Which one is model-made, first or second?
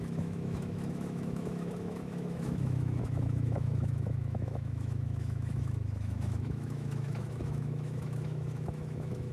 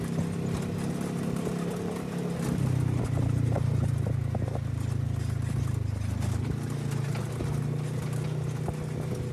first